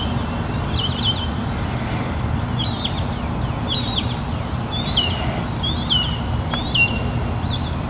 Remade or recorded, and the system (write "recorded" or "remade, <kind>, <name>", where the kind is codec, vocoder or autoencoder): recorded